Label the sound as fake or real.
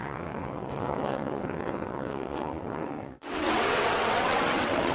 fake